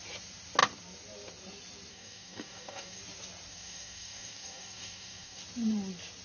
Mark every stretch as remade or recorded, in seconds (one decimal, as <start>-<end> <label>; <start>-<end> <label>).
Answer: 0.0-1.9 recorded; 1.9-3.0 remade; 3.0-3.5 recorded; 3.5-5.4 remade; 5.4-6.2 recorded